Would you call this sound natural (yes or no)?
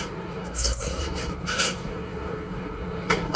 no